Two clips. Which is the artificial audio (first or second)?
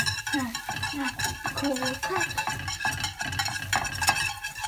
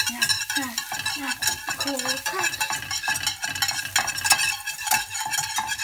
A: first